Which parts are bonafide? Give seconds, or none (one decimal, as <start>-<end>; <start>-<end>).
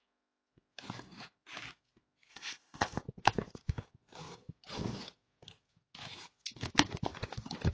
0.0-2.3; 3.0-7.7